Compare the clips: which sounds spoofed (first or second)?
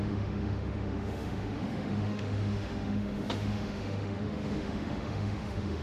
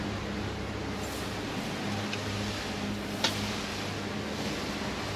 first